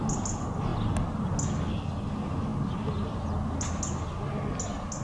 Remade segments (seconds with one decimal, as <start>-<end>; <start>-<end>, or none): none